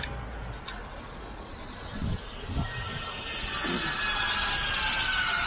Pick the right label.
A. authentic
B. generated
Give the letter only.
A